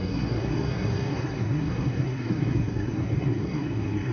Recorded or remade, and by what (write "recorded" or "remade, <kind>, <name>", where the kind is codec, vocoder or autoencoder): remade, codec, SNAC